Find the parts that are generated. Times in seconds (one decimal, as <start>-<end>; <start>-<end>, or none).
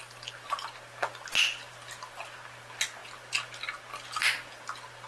none